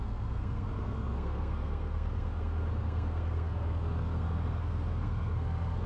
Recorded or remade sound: remade